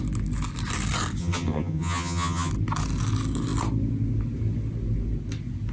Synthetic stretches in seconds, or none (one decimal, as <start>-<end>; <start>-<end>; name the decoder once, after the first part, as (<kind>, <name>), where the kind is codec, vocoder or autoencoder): 1.2-2.5 (vocoder, HiFi-GAN)